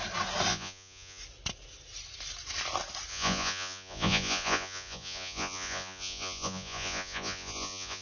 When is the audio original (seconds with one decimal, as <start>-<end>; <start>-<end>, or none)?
0.0-0.5; 1.2-3.1